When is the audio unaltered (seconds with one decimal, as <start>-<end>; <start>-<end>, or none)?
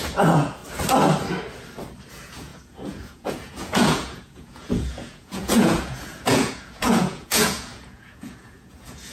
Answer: 0.6-2.1